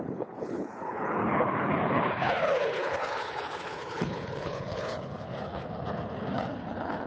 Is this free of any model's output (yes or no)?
no